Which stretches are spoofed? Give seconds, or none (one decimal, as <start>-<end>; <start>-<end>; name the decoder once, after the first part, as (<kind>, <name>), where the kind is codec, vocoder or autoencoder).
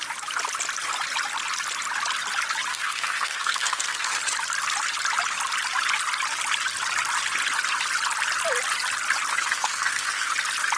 2.7-4.2 (codec, SNAC); 9.3-10.3